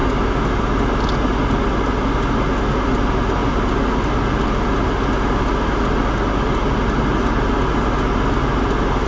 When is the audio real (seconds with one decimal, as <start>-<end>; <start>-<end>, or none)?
0.0-9.1